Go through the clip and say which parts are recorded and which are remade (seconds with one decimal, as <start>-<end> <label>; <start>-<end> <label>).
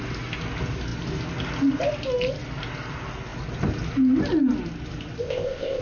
0.0-5.2 recorded; 5.2-5.8 remade